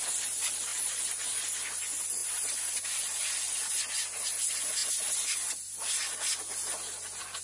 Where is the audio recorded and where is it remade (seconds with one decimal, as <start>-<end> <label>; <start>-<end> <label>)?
0.0-0.7 recorded; 0.7-1.4 remade; 1.4-7.4 recorded